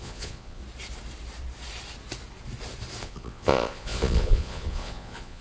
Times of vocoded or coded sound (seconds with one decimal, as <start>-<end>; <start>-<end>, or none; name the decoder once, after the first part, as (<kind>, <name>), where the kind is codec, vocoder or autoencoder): 0.0-0.6 (vocoder, Vocos); 3.0-5.4